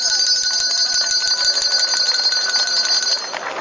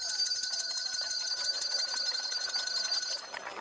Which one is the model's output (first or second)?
second